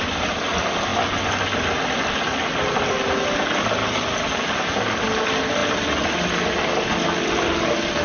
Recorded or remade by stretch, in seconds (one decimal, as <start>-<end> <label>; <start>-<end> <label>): 0.0-8.0 recorded